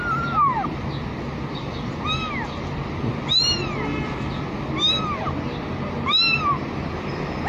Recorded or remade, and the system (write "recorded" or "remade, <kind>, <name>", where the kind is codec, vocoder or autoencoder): recorded